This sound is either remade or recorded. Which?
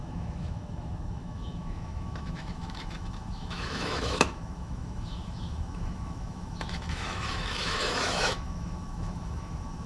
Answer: remade